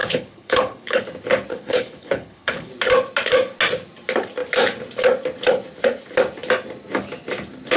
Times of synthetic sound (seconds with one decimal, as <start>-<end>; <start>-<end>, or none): 0.0-1.0; 1.5-2.7